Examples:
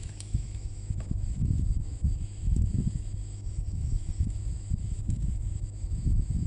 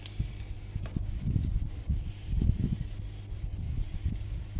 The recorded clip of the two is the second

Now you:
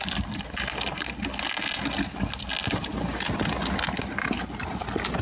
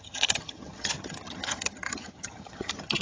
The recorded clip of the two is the first